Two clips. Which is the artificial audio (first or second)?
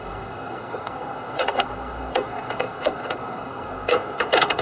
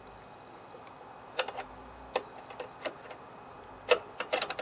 first